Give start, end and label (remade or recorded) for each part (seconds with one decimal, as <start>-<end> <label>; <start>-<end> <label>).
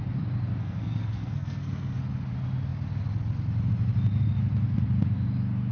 0.0-0.6 recorded; 0.6-2.0 remade; 2.0-5.7 recorded